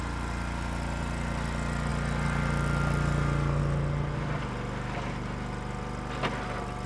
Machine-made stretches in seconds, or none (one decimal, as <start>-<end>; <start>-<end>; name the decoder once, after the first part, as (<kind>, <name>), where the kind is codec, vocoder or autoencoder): none